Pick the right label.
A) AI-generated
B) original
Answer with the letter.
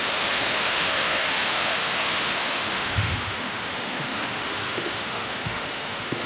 A